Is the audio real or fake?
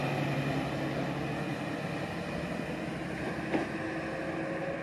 real